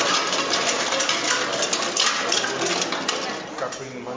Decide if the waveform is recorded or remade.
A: recorded